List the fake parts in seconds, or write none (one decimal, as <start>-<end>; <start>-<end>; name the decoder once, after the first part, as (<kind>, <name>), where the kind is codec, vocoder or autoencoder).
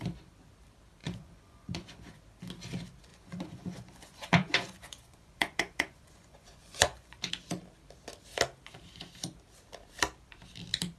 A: 1.0-2.2 (vocoder, Vocos); 3.1-7.3